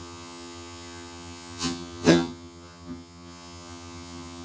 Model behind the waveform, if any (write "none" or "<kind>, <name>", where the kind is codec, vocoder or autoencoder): vocoder, HiFi-GAN